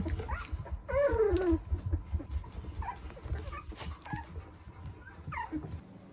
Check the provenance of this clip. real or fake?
real